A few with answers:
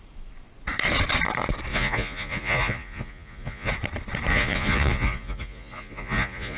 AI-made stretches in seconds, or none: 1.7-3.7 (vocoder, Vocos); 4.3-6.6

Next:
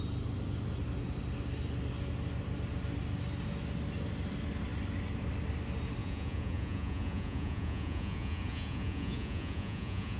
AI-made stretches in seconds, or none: 6.0-10.2 (vocoder, Vocos)